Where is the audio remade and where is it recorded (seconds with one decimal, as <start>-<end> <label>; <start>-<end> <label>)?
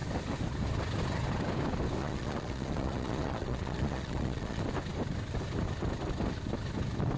0.0-2.0 recorded; 2.0-4.6 remade; 4.6-7.2 recorded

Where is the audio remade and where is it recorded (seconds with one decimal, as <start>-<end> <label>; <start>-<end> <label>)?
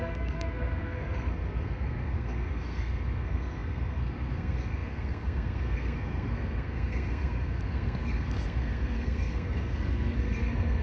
0.0-10.8 remade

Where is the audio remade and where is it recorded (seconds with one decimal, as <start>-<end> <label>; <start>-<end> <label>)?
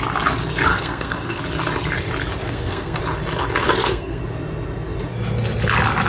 0.0-0.7 recorded; 0.7-1.4 remade; 1.4-2.4 recorded; 2.4-3.0 remade; 3.0-3.6 recorded; 3.6-4.2 remade; 4.2-6.1 recorded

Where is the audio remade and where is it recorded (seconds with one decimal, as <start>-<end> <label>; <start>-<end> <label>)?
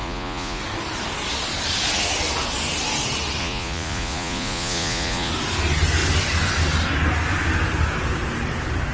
0.0-0.6 remade; 0.6-3.4 recorded; 3.4-5.3 remade; 5.3-8.9 recorded